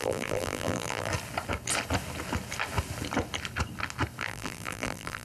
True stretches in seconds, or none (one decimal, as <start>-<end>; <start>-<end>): 1.1-4.2